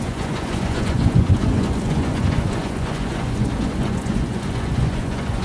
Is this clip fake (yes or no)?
yes